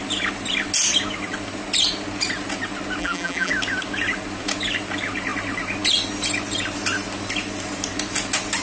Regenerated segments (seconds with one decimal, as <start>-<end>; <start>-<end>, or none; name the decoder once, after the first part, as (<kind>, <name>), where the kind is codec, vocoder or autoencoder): 3.0-3.5 (vocoder, BigVGAN v2)